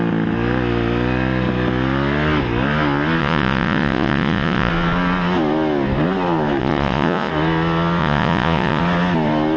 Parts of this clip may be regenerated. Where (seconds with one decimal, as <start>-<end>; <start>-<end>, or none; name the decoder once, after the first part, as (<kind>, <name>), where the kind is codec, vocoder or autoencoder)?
3.2-4.7 (vocoder, Vocos); 6.6-7.3; 8.0-8.8